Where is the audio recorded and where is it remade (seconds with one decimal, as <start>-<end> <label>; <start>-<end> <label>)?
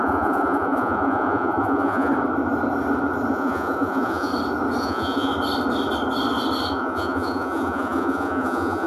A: 0.0-2.1 remade; 2.1-3.3 recorded; 3.3-4.3 remade; 4.3-4.8 recorded; 4.8-5.3 remade; 5.3-6.7 recorded; 6.7-8.9 remade